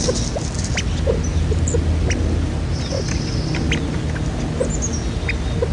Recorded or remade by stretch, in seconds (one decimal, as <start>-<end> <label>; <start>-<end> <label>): 0.0-5.7 recorded